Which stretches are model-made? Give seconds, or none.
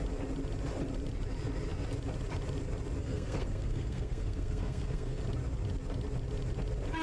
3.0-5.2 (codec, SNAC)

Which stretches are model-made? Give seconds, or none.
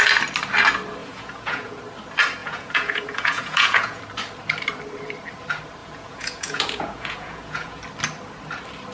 1.0-1.8 (vocoder, Vocos); 2.4-4.0; 5.8-7.8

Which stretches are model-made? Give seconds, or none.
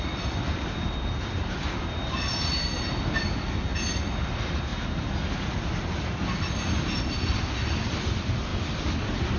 0.0-3.7 (vocoder, BigVGAN v2); 4.2-4.7; 7.0-9.4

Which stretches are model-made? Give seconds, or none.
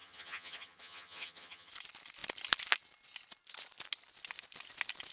0.0-1.7 (vocoder, HiFi-GAN)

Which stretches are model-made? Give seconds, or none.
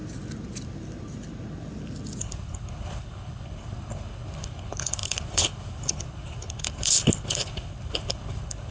2.2-8.7 (codec, HILCodec)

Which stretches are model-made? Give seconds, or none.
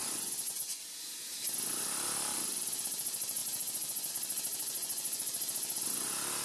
0.0-0.8 (vocoder, Vocos); 3.4-4.1; 4.5-5.2